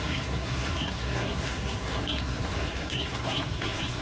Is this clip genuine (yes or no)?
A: no